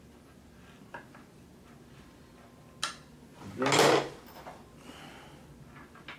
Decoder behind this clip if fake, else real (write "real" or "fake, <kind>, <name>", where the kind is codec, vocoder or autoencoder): real